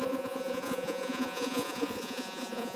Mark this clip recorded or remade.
remade